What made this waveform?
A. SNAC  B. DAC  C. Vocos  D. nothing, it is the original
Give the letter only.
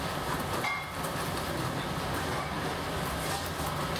D